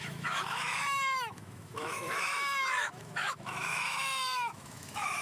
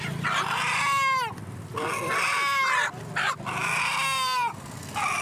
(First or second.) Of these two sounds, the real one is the second